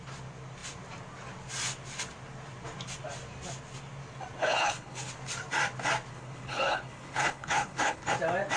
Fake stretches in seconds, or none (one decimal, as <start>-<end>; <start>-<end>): 4.4-5.1; 6.1-8.1